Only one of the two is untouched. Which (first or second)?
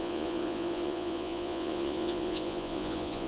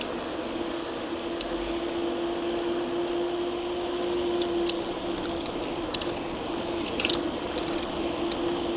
second